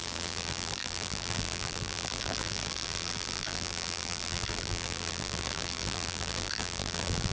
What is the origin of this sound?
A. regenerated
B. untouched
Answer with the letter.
A